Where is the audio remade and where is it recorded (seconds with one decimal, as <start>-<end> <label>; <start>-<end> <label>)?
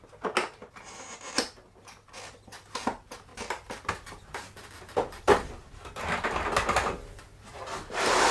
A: 0.0-8.3 recorded